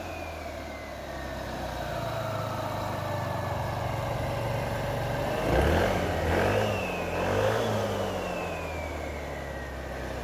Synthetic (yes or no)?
no